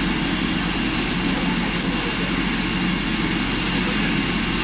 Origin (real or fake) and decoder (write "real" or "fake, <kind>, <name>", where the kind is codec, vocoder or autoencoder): real